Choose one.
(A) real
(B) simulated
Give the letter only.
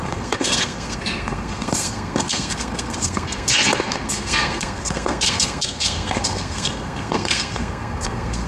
B